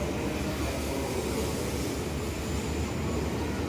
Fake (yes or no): no